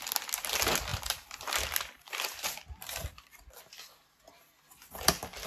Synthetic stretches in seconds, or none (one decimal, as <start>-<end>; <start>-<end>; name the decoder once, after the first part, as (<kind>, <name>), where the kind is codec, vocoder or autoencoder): 0.9-3.6 (vocoder, BigVGAN v2)